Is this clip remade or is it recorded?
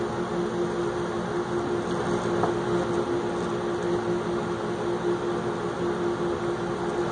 recorded